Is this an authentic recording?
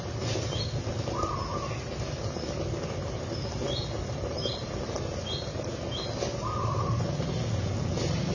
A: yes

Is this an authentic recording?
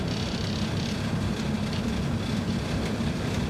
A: yes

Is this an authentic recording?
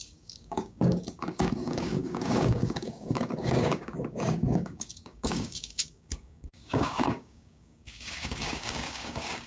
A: no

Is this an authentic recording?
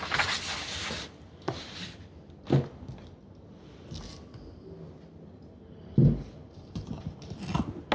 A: yes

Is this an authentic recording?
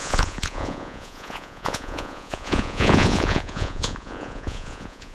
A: no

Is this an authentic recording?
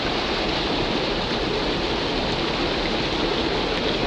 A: yes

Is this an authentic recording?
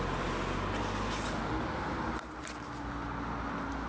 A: yes